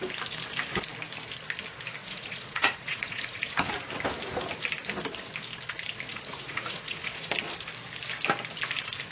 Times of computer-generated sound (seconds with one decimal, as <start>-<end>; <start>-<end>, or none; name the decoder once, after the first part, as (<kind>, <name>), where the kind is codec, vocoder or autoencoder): 2.0-3.7 (vocoder, Vocos); 6.1-7.3